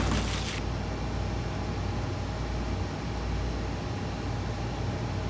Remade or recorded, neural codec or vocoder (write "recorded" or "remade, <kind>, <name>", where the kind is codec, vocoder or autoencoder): recorded